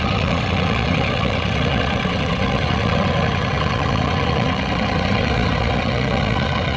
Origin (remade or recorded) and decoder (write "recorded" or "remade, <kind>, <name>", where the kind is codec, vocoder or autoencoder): remade, vocoder, WaveNeXt